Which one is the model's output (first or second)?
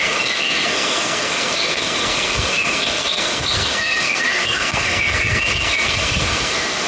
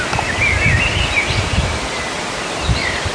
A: first